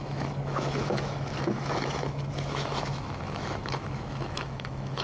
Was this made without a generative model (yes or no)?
no